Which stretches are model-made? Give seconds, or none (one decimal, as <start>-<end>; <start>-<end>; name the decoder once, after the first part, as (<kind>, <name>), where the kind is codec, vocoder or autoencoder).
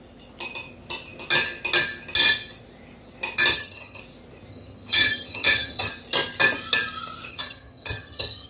3.5-4.0 (vocoder, HiFi-GAN); 4.5-5.9; 7.3-8.5